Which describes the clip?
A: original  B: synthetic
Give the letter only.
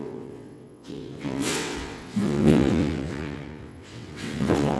B